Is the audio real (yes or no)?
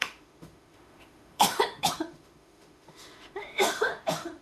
no